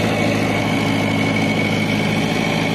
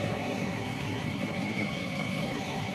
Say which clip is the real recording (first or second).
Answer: first